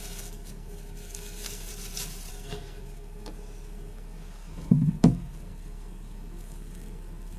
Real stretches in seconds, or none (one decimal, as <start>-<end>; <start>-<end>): 1.7-2.3

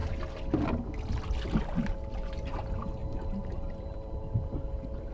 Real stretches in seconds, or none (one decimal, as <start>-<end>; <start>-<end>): 0.0-1.6

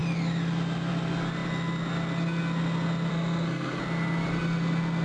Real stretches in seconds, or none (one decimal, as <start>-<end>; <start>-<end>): 0.0-3.1; 3.8-5.0

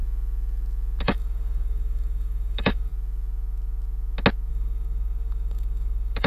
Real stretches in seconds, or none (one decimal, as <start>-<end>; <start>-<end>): 0.0-1.0; 2.9-4.5

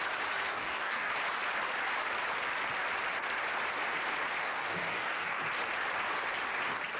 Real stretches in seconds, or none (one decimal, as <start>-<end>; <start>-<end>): 0.0-0.5; 1.1-4.4; 5.4-7.0

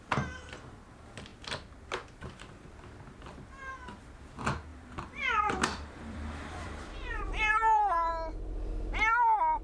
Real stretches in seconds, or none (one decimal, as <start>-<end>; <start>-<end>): 0.0-4.7; 8.1-9.6

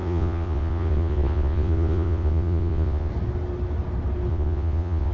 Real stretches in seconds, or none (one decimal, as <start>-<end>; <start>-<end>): 3.1-4.3